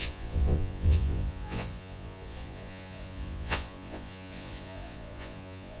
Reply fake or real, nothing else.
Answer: fake